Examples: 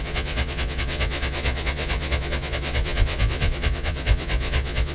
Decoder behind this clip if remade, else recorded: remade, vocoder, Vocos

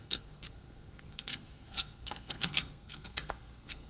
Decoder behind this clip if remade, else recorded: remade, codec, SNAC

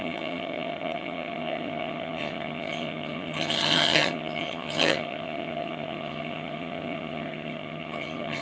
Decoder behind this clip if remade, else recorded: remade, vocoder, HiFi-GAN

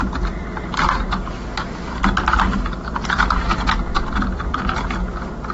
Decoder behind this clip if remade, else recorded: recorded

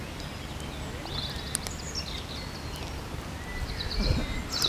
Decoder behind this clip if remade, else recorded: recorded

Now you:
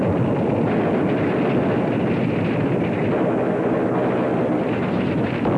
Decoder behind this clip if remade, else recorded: recorded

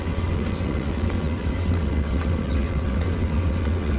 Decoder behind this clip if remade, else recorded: remade, vocoder, WaveNeXt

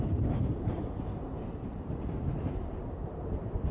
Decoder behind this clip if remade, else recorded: remade, vocoder, BigVGAN v2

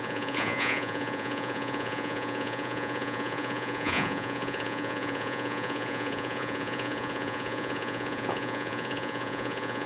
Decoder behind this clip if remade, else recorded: remade, vocoder, Vocos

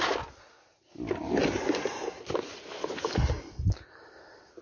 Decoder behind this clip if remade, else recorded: recorded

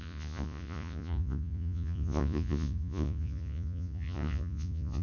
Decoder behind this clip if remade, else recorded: remade, vocoder, Vocos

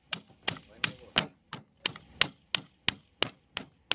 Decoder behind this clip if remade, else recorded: recorded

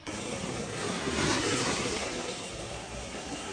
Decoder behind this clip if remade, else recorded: remade, codec, SNAC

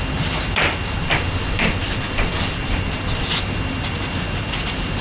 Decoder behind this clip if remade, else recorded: recorded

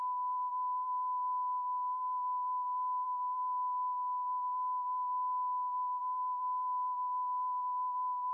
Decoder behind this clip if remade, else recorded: remade, vocoder, BigVGAN v2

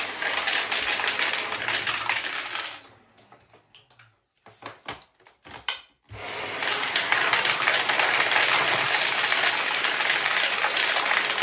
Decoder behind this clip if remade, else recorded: recorded